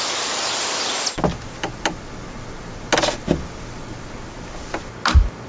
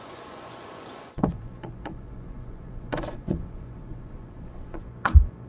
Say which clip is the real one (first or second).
first